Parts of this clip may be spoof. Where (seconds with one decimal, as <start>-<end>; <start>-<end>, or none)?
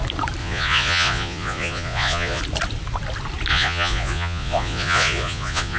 0.4-2.4; 3.5-5.8